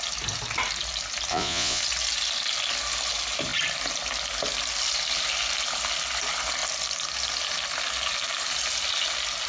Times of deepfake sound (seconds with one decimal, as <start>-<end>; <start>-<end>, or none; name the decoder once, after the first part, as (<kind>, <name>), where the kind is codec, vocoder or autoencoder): 1.3-1.8 (vocoder, Vocos)